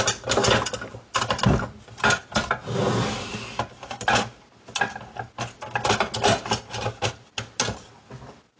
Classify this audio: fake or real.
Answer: real